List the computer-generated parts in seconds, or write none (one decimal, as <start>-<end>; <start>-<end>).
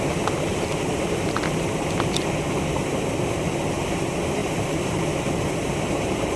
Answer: none